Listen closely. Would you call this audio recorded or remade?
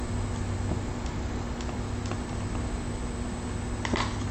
recorded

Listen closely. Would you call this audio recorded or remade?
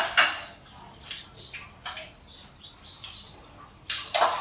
recorded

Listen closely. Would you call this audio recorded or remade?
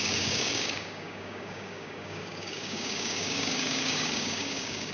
remade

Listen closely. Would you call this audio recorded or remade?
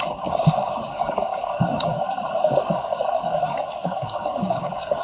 remade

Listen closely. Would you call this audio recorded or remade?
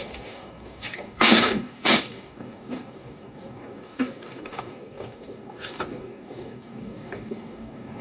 remade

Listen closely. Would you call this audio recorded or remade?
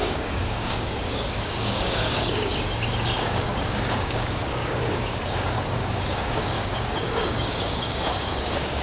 remade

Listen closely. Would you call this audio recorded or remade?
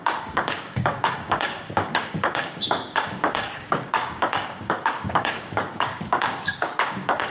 remade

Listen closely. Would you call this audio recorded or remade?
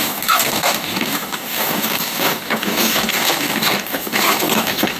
remade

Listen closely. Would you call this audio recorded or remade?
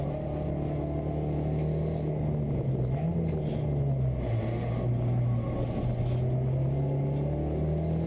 recorded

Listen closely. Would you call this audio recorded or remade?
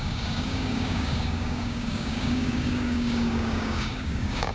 remade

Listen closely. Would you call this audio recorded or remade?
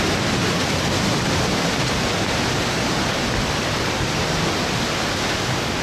recorded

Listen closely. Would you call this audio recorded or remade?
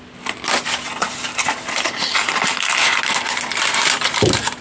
recorded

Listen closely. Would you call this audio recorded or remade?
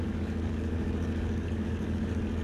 remade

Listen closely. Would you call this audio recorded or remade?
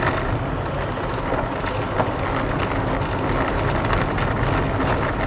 recorded